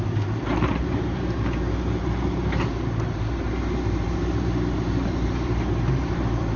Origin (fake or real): fake